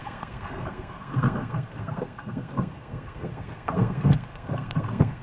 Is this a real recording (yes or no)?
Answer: no